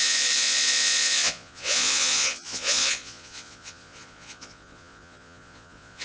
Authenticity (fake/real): fake